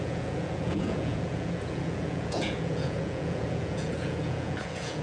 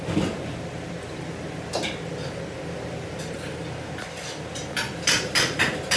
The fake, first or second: first